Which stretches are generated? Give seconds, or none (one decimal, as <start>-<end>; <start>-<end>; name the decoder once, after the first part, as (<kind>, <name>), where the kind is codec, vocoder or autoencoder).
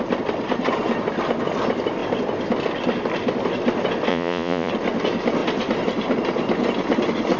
4.1-4.7 (vocoder, Vocos)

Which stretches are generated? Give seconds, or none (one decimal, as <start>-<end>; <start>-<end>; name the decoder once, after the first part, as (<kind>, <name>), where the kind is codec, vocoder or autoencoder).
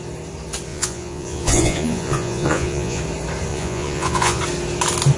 0.7-3.0 (vocoder, Vocos); 3.5-4.4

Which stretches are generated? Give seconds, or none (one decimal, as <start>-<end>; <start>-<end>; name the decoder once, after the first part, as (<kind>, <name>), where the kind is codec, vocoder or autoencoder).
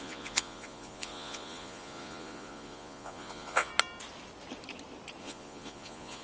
0.0-3.7 (vocoder, Vocos); 5.2-6.2